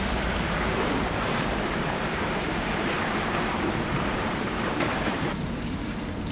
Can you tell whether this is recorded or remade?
remade